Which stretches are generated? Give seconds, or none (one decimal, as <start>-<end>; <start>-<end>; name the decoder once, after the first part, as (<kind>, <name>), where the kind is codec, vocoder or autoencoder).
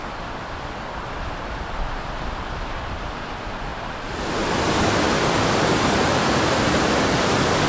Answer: none